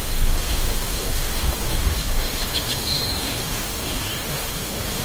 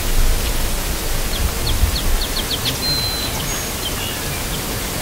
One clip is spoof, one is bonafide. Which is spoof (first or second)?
first